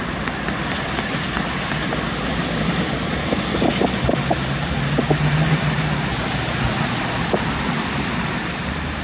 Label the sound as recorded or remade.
recorded